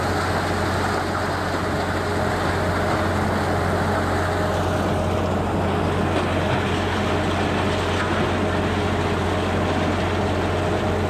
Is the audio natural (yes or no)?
yes